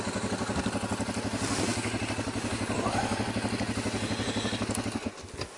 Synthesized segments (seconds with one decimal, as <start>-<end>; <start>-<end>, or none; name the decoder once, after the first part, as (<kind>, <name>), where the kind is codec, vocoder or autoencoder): none